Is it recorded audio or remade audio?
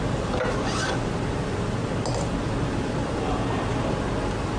recorded